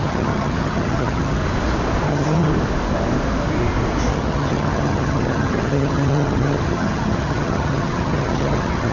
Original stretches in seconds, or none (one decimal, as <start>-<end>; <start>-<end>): 1.4-2.1; 2.5-4.1